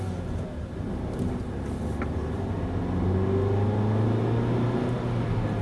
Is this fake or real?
real